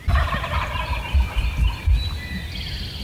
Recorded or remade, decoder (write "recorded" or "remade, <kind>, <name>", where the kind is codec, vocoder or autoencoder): recorded